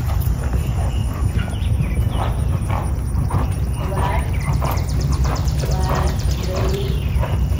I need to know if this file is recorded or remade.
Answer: remade